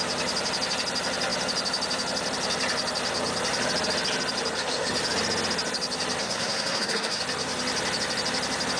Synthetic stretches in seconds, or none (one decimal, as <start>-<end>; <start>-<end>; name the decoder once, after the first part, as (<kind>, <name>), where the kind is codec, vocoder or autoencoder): 6.2-7.2 (codec, SNAC)